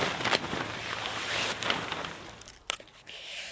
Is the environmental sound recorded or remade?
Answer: recorded